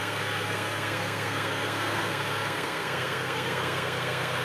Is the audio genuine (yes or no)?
no